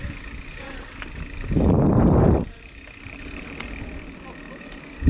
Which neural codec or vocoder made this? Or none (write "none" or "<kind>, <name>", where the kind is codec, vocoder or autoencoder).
none